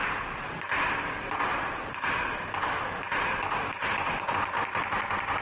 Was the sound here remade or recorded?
recorded